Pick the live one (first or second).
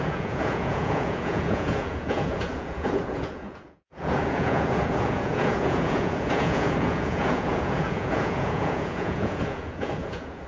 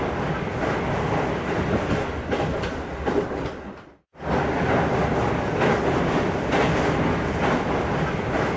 second